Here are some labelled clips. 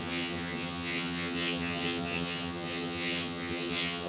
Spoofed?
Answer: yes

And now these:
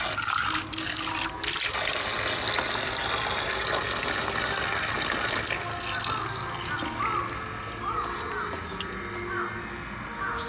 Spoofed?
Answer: no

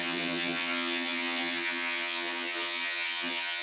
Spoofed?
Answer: yes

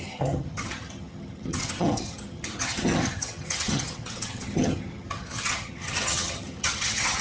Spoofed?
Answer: yes